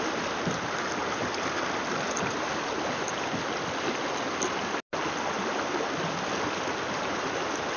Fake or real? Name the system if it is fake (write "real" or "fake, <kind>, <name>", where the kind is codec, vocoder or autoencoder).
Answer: real